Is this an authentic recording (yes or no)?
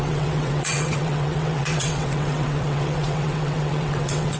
no